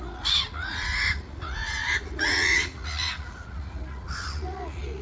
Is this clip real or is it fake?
fake